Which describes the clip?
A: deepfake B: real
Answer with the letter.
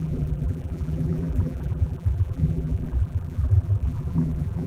A